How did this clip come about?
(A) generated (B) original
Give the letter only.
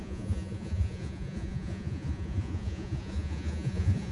A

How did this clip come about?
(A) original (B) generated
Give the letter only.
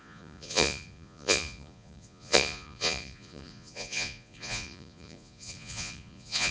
B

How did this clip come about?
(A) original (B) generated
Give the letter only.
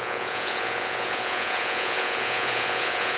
B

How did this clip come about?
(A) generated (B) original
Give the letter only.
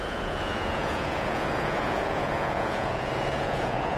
A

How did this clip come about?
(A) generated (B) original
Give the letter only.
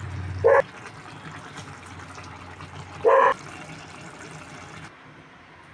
B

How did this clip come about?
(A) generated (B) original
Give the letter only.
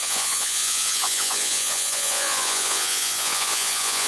A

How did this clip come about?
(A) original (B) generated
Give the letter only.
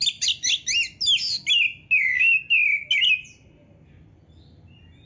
A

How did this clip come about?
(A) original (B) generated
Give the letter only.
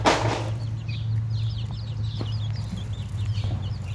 A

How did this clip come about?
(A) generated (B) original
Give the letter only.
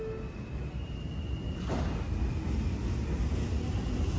B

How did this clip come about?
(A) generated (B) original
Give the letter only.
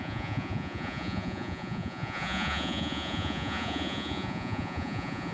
A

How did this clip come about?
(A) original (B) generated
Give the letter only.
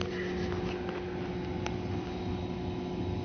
A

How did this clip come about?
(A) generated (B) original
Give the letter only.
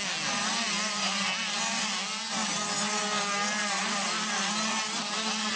B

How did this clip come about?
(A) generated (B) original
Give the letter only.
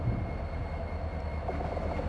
B